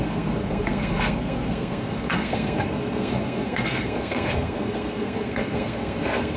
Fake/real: fake